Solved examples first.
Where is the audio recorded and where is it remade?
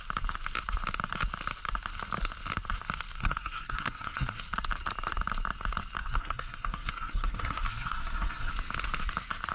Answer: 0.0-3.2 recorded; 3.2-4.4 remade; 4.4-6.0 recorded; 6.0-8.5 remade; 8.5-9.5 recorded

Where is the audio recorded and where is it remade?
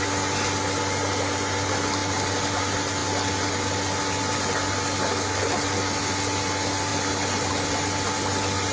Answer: 0.0-2.0 recorded; 2.0-2.6 remade; 2.6-6.9 recorded; 6.9-7.5 remade; 7.5-8.7 recorded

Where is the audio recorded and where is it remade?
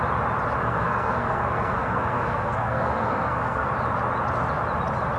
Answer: 0.0-0.6 recorded; 0.6-3.7 remade; 3.7-5.2 recorded